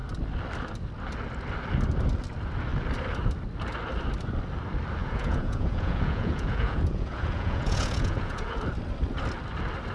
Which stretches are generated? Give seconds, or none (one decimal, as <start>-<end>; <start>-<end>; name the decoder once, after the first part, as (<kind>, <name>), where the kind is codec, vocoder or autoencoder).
5.0-8.6 (vocoder, Vocos)